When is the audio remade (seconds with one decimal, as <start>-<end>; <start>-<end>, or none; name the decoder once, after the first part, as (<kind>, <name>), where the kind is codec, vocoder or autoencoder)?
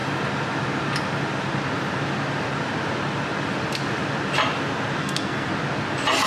5.0-5.5 (codec, SNAC)